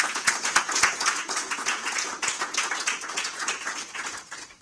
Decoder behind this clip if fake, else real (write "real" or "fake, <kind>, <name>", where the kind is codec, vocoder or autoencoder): fake, vocoder, Vocos